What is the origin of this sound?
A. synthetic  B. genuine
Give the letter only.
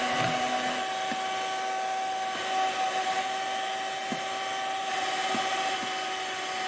B